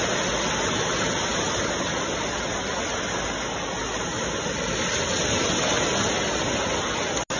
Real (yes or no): yes